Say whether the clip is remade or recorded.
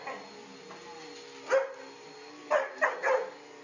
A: recorded